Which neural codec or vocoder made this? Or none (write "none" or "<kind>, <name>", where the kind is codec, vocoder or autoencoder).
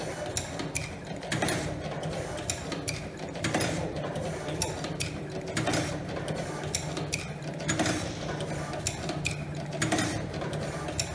none